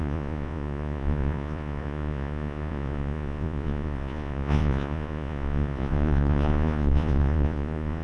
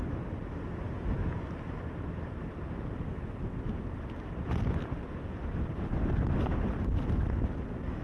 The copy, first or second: first